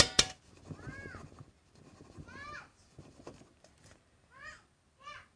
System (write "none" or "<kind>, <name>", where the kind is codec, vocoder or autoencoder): none